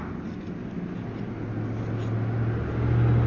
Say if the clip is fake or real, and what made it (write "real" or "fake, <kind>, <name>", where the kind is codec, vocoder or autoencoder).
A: real